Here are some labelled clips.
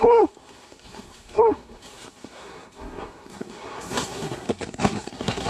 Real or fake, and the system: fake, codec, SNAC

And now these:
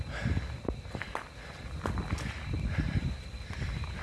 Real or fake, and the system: real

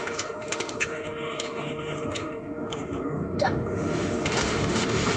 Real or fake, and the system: fake, autoencoder, DAC-VAE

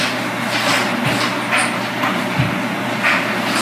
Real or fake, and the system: real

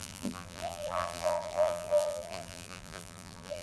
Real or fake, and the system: fake, vocoder, BigVGAN v2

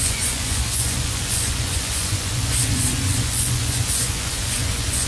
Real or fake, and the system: fake, vocoder, Vocos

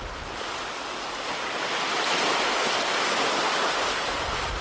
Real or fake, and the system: real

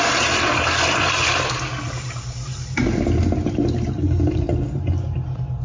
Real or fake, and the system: fake, vocoder, BigVGAN v2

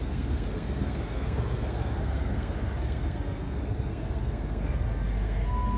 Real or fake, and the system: fake, codec, SNAC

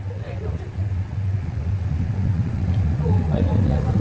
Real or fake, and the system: fake, vocoder, WaveNeXt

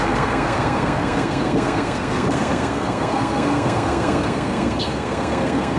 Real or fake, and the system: fake, codec, SNAC